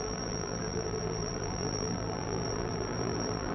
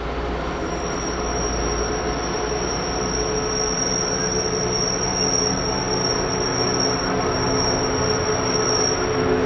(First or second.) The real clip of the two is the second